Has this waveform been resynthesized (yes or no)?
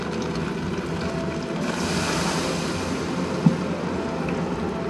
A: no